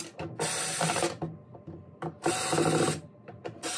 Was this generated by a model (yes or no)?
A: no